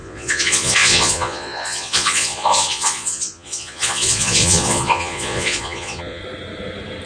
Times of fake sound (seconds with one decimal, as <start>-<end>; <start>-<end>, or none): 0.0-6.2